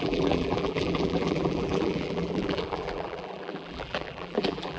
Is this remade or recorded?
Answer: remade